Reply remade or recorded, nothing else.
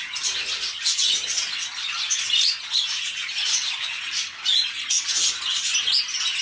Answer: recorded